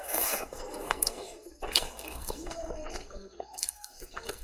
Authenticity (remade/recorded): remade